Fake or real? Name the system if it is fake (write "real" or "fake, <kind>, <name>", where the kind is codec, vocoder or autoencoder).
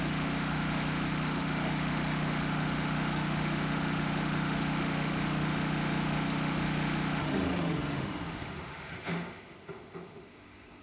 fake, autoencoder, DAC-VAE